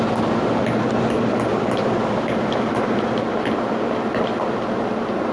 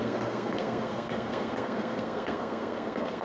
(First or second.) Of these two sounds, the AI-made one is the second